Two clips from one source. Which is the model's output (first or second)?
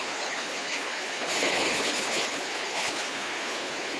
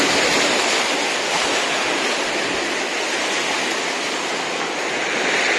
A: first